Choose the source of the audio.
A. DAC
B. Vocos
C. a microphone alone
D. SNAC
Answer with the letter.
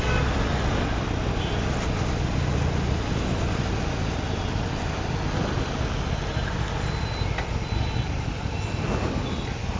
C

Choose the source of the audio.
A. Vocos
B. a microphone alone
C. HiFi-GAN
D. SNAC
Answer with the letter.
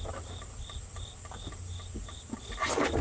B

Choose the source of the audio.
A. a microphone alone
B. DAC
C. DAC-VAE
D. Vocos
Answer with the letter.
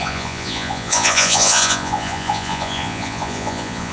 D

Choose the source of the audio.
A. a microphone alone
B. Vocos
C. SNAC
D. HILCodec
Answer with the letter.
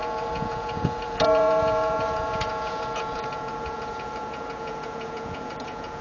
B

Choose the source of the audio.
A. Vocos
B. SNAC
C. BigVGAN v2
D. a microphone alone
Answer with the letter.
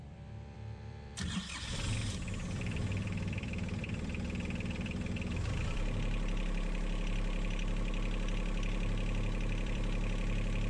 C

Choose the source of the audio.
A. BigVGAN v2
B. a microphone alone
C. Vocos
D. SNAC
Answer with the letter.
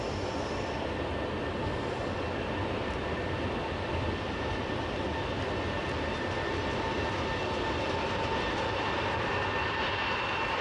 B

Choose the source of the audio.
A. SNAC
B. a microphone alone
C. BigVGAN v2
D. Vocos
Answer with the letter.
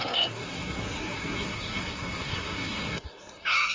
A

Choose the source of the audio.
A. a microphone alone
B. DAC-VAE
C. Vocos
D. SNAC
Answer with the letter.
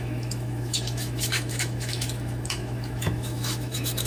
B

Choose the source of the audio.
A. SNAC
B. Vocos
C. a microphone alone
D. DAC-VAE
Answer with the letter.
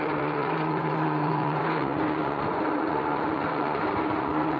B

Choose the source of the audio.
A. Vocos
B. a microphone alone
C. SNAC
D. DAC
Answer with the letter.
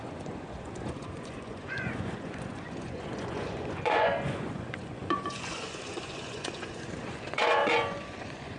A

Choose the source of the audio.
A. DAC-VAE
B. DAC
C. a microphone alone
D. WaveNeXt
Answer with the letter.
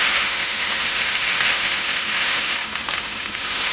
A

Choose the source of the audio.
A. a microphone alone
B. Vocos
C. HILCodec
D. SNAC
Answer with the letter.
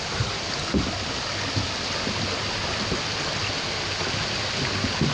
A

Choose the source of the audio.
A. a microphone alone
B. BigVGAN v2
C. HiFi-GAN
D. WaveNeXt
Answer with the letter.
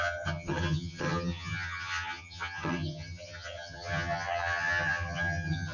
C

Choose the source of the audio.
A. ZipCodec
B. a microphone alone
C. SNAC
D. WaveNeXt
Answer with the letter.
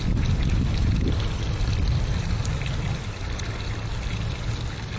B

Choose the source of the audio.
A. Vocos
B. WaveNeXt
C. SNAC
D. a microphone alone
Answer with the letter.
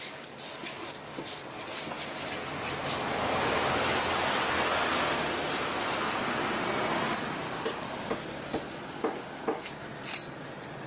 D